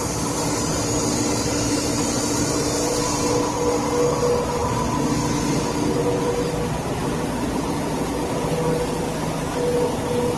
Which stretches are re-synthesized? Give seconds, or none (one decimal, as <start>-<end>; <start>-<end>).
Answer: none